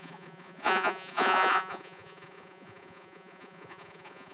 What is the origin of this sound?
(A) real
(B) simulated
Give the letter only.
B